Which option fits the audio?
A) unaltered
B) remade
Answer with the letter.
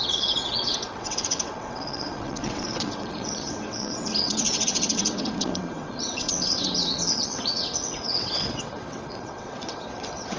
B